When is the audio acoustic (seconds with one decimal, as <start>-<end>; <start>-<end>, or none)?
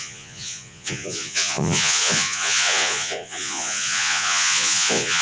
none